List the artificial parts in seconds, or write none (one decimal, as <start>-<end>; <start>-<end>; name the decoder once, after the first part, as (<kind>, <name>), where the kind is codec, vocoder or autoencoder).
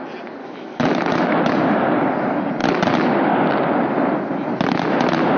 0.4-1.4 (autoencoder, DAC-VAE)